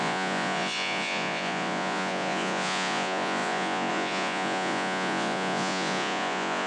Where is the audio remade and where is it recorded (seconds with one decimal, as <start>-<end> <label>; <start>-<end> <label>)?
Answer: 0.0-6.7 remade